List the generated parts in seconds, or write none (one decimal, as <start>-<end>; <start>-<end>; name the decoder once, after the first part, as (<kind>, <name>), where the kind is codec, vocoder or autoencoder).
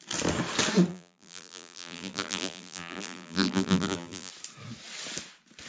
0.9-4.3 (vocoder, BigVGAN v2)